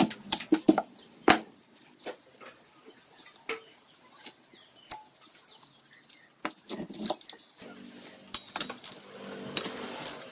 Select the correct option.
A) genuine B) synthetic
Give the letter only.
A